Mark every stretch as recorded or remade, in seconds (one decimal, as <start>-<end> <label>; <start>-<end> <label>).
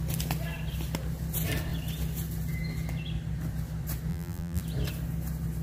0.0-4.1 recorded; 4.1-4.6 remade; 4.6-5.6 recorded